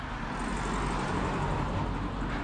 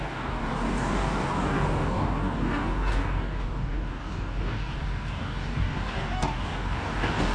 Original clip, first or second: first